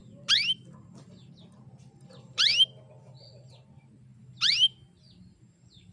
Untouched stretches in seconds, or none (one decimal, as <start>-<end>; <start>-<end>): 0.0-1.0; 2.5-3.2; 4.1-5.2